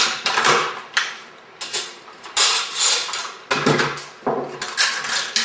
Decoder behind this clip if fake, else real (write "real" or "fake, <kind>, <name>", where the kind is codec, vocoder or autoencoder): real